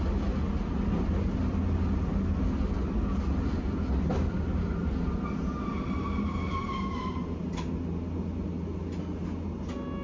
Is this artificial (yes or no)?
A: no